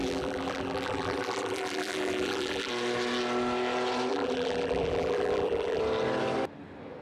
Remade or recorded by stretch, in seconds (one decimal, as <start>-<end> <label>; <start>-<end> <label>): 0.0-2.7 remade; 2.7-4.1 recorded; 4.1-5.8 remade; 5.8-7.0 recorded